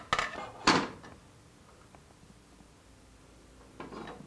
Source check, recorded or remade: recorded